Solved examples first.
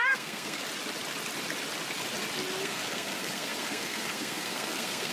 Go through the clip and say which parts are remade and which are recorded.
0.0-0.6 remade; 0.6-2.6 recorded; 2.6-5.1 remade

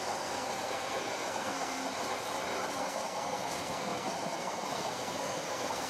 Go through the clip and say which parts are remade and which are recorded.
0.0-1.8 remade; 1.8-2.7 recorded; 2.7-5.9 remade

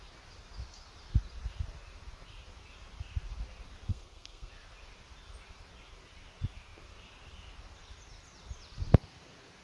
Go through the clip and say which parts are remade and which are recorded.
0.0-3.9 recorded; 3.9-4.5 remade; 4.5-9.6 recorded

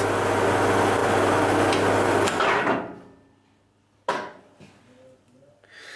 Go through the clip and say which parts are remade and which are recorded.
0.0-6.0 recorded